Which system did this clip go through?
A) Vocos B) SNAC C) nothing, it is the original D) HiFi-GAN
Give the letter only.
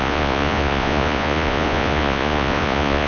A